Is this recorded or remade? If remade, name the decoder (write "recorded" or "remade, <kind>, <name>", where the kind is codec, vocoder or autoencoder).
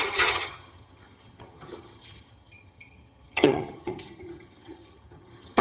remade, vocoder, HiFi-GAN